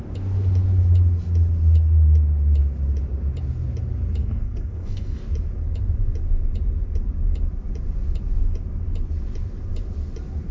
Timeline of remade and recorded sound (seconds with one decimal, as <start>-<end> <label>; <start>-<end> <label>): 0.0-4.2 recorded; 4.2-5.2 remade; 5.2-10.5 recorded